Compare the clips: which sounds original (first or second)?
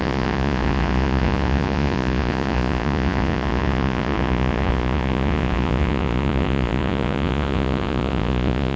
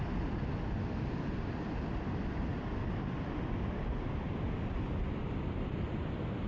second